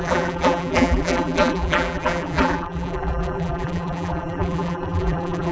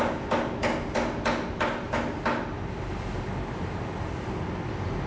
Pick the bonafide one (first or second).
second